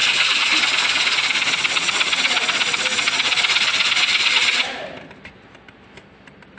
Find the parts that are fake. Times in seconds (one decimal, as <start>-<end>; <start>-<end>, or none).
none